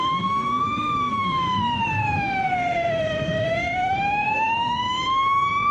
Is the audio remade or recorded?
remade